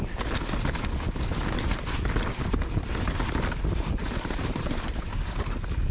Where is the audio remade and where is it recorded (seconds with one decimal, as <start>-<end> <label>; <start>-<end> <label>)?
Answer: 0.0-4.0 recorded; 4.0-5.2 remade; 5.2-5.9 recorded